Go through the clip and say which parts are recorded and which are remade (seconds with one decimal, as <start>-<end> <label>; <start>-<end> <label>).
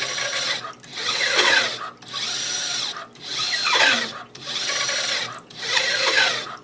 0.0-0.9 recorded; 0.9-1.6 remade; 1.6-6.6 recorded